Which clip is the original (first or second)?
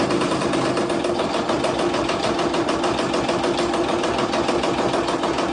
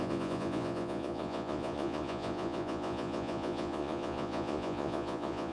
first